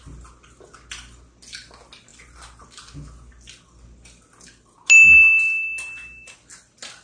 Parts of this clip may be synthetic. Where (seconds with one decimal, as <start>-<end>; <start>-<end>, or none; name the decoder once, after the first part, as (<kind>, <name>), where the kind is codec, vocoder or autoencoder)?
none